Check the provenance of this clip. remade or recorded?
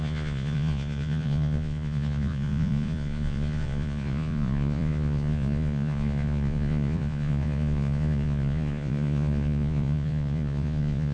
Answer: remade